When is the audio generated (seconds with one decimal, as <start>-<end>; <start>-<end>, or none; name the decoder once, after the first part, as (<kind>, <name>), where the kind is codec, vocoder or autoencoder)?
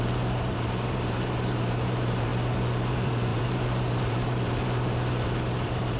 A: 0.0-2.3 (vocoder, BigVGAN v2); 2.9-6.0